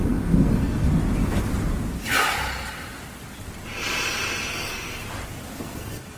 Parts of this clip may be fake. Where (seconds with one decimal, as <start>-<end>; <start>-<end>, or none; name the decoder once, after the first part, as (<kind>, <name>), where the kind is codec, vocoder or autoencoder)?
0.0-0.9 (codec, SNAC); 4.5-5.0; 5.6-6.2